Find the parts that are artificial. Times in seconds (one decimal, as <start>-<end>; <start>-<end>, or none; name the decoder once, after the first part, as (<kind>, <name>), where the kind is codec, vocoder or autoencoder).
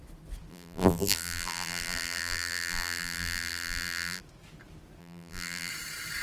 0.5-4.2 (vocoder, BigVGAN v2); 5.0-5.7